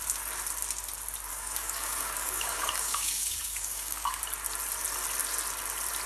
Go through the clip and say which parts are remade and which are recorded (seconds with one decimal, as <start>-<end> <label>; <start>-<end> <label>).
0.0-1.3 recorded; 1.3-4.2 remade; 4.2-6.1 recorded